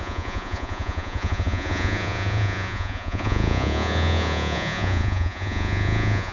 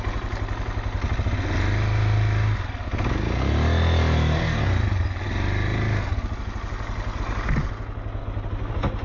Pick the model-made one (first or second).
first